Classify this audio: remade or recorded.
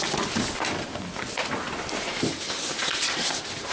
recorded